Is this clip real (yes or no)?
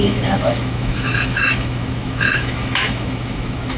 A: no